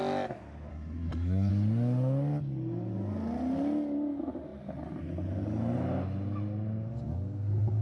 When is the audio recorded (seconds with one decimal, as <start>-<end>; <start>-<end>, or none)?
0.0-0.7; 1.5-7.8